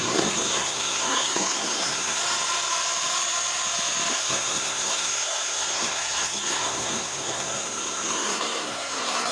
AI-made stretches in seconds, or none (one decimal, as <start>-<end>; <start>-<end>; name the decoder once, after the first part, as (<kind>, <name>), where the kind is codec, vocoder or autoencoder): 0.0-2.2 (codec, SNAC); 4.1-9.3